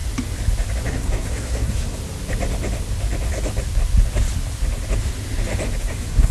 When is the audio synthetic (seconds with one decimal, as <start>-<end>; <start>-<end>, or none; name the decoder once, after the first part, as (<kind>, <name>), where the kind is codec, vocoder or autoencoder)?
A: 0.9-2.0 (codec, SNAC); 5.8-6.3